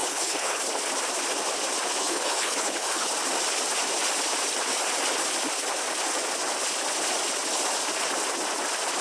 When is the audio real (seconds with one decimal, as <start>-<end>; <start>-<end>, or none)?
0.6-2.0; 3.1-9.0